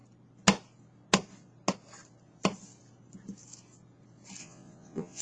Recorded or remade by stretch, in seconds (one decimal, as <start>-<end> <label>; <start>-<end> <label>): 0.0-4.4 recorded; 4.4-5.2 remade